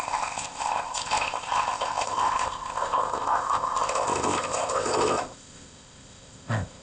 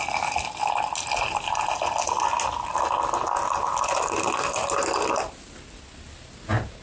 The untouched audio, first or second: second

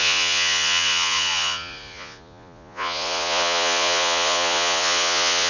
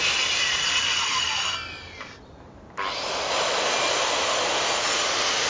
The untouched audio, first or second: second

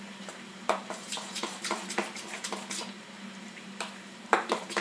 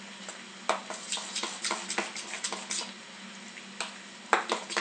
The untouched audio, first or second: second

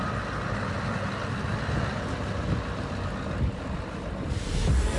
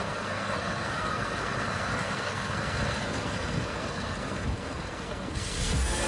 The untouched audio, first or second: first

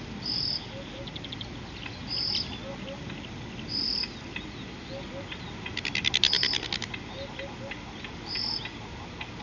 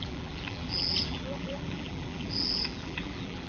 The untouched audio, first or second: first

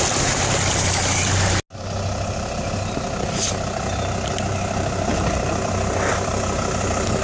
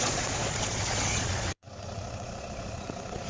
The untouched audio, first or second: first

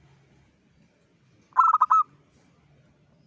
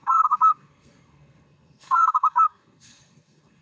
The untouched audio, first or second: first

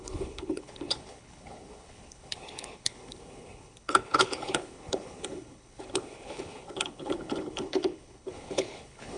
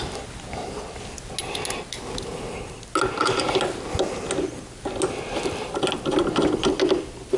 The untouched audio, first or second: second